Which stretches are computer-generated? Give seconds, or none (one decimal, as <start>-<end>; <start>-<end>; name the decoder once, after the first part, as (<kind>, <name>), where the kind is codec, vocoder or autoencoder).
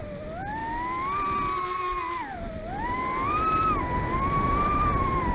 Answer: none